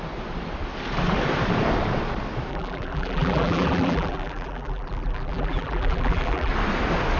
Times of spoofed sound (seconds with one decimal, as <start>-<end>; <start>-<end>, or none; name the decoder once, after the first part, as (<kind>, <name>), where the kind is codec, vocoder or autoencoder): 2.5-6.5 (vocoder, BigVGAN v2)